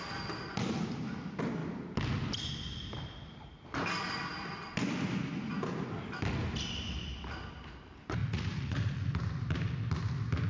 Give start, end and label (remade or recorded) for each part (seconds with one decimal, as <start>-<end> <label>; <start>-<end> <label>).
0.0-8.2 recorded; 8.2-9.2 remade; 9.2-10.5 recorded